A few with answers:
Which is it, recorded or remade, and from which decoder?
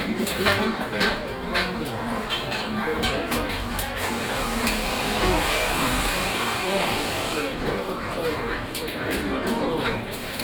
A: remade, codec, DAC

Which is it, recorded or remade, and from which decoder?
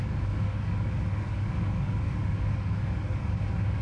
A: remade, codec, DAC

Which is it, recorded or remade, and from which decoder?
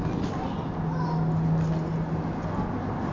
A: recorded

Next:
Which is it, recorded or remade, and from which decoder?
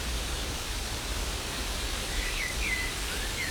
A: remade, codec, DAC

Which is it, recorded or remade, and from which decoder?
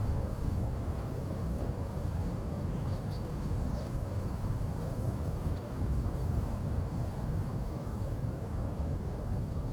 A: remade, codec, DAC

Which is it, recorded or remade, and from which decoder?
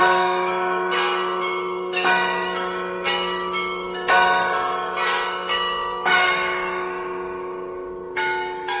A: remade, codec, DAC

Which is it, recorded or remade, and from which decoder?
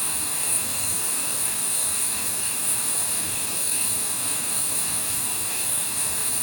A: remade, codec, DAC